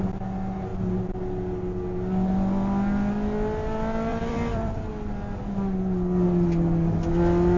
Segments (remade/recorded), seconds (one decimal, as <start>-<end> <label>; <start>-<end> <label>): 0.0-4.1 recorded; 4.1-4.9 remade; 4.9-7.6 recorded